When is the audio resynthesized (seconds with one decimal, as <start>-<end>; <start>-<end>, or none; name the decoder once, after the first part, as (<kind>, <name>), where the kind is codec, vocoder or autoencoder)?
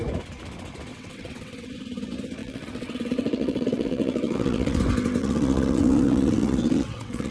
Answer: 0.9-1.7 (vocoder, WaveNeXt); 2.4-4.8; 5.2-7.3